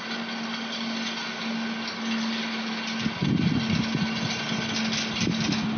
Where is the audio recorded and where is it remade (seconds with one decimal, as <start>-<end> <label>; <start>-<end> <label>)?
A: 0.0-5.8 recorded